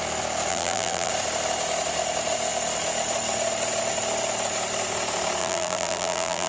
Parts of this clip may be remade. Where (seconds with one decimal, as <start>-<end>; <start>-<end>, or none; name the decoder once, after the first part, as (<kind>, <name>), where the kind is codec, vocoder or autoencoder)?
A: 0.5-1.1 (vocoder, BigVGAN v2); 5.4-6.5